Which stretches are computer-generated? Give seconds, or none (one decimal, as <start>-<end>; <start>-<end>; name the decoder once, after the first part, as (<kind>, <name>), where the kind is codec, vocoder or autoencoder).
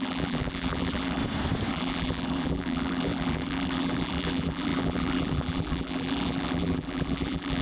0.0-1.2 (vocoder, BigVGAN v2); 1.7-7.6